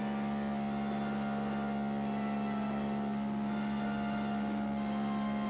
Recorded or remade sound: recorded